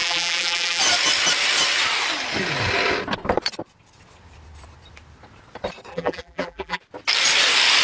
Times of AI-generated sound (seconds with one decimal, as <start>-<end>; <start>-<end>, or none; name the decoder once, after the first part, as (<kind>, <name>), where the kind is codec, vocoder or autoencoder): 0.0-0.8 (vocoder, BigVGAN v2); 5.9-6.8